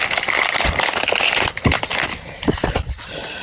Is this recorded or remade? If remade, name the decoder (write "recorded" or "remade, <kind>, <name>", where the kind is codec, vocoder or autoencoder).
remade, vocoder, BigVGAN v2